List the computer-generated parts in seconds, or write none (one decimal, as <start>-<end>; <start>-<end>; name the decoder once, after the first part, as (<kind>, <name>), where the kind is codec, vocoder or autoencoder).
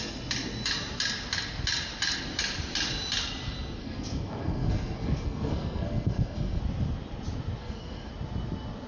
3.8-6.6 (codec, SNAC); 7.6-8.1